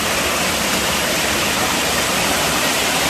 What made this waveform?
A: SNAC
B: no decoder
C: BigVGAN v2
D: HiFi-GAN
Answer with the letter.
C